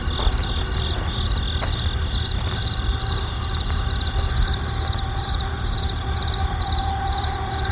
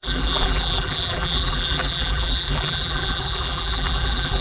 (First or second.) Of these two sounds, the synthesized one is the second